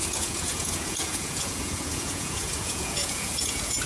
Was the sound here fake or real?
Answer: fake